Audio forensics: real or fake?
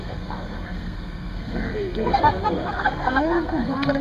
fake